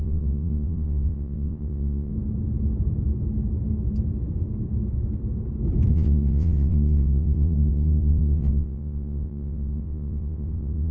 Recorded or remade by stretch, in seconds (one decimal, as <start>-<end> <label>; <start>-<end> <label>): 0.0-2.1 remade; 2.1-5.9 recorded; 5.9-10.9 remade